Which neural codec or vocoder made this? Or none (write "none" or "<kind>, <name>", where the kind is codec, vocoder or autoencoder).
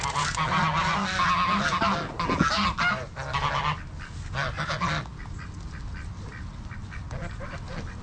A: none